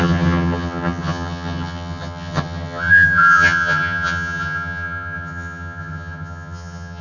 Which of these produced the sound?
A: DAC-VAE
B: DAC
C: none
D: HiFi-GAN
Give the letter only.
D